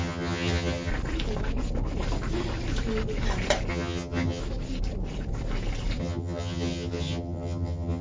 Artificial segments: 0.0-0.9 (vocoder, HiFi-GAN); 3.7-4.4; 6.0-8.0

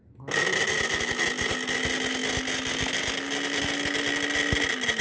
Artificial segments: none

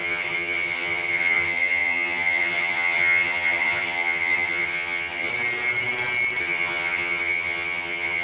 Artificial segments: 0.0-5.3 (vocoder, HiFi-GAN); 6.4-8.2